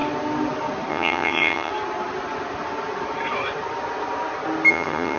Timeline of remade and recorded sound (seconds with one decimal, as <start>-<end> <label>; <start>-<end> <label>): 0.0-0.9 recorded; 0.9-1.7 remade; 1.7-4.7 recorded; 4.7-5.2 remade